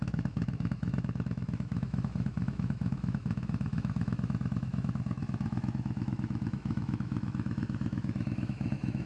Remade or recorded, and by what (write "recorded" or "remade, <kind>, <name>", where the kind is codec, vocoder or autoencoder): remade, autoencoder, DAC-VAE